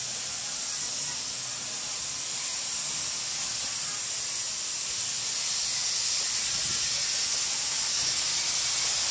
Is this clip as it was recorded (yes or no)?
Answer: yes